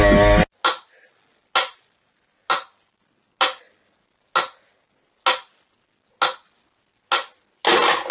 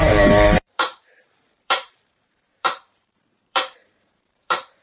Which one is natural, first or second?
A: first